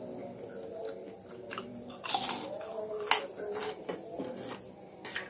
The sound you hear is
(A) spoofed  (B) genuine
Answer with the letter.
B